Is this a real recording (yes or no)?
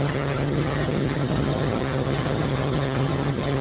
no